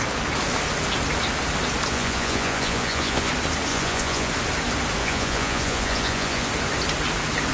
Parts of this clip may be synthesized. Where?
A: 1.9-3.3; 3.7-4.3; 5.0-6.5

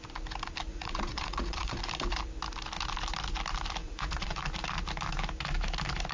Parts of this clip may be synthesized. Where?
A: 0.7-1.8; 3.8-4.4

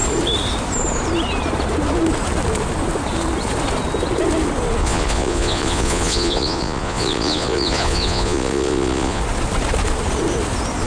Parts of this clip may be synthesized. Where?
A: 4.8-9.2

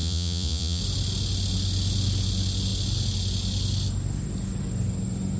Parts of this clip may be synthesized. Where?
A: 0.0-0.8

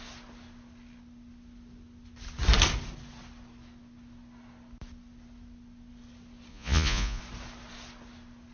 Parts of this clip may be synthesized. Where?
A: 6.5-7.2